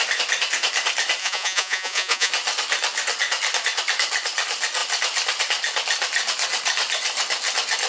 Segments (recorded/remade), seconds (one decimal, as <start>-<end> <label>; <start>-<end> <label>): 0.0-1.2 recorded; 1.2-2.3 remade; 2.3-7.9 recorded